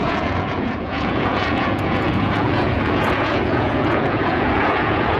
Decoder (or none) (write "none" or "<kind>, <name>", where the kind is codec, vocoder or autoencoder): vocoder, Vocos